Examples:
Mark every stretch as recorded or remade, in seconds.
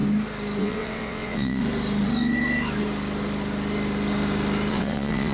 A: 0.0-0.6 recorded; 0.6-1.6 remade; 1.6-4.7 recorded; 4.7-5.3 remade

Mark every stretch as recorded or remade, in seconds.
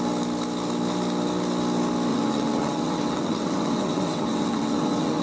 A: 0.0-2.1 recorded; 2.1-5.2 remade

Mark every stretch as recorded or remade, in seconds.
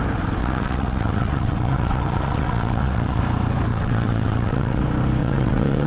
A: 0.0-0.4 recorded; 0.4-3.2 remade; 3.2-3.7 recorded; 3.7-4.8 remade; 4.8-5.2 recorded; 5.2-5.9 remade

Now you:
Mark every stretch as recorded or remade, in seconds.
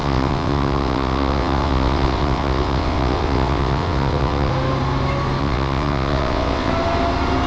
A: 0.0-4.5 remade; 4.5-5.4 recorded; 5.4-6.7 remade; 6.7-7.5 recorded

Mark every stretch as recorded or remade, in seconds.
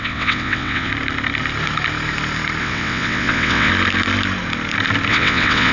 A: 0.0-0.9 remade; 0.9-2.6 recorded; 2.6-3.7 remade; 3.7-5.1 recorded; 5.1-5.7 remade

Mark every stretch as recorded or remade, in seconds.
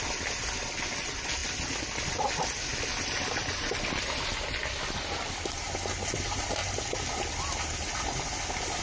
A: 0.0-8.8 recorded